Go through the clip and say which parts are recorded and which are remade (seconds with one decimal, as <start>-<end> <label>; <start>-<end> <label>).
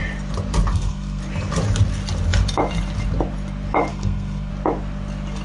0.0-0.7 recorded; 0.7-1.2 remade; 1.2-3.9 recorded; 3.9-4.5 remade; 4.5-5.4 recorded